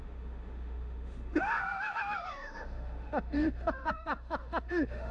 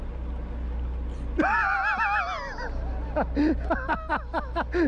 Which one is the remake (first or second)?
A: first